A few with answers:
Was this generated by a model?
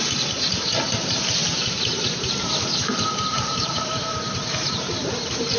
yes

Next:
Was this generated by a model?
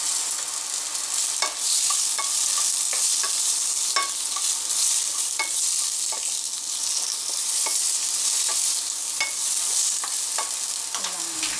no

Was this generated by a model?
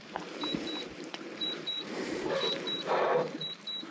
yes